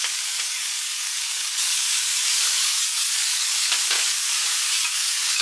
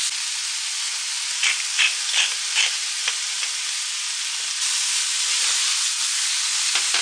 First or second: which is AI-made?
first